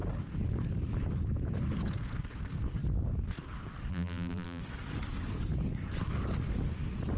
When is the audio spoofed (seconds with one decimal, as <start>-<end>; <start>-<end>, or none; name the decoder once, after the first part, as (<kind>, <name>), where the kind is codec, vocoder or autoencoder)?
3.9-4.6 (vocoder, BigVGAN v2)